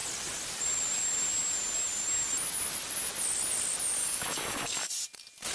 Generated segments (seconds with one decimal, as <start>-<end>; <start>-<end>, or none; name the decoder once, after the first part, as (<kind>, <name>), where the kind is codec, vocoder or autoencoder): 4.0-4.9 (codec, DAC)